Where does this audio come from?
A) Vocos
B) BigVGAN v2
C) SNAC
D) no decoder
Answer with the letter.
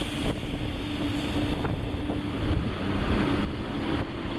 D